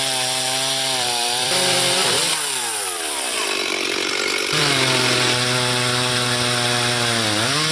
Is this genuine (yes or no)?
no